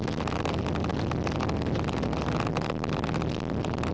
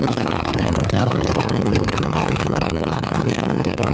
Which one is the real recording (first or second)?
first